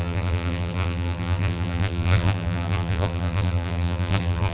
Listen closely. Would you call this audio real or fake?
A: fake